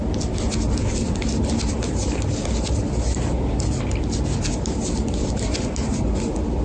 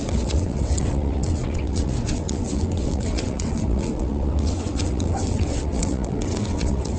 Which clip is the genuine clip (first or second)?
first